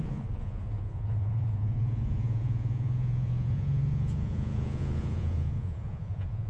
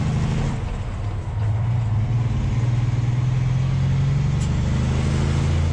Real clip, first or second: second